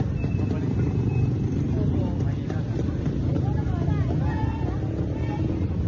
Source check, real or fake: real